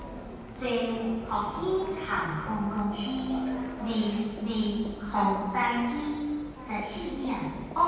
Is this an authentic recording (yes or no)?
yes